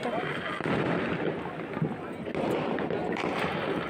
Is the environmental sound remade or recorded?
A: recorded